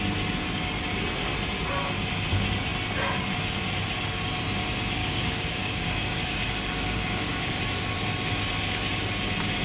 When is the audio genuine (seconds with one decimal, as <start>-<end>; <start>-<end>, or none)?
0.0-5.0; 7.6-9.6